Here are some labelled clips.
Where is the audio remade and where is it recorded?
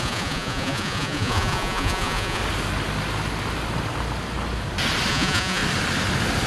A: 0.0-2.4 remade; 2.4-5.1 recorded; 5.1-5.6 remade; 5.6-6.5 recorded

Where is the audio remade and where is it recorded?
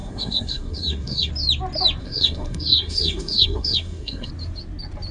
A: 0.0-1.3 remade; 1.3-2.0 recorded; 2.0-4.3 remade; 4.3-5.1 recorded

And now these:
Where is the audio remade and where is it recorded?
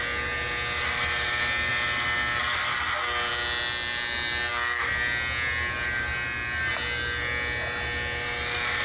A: 0.0-8.8 recorded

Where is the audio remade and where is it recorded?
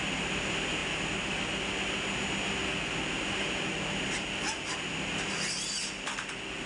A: 0.0-6.7 recorded